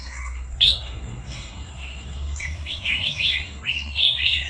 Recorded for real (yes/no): no